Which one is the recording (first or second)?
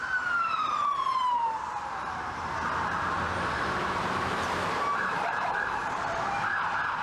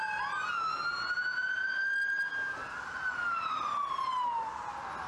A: second